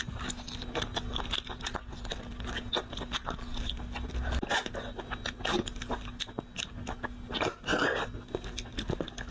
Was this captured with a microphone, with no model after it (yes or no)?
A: yes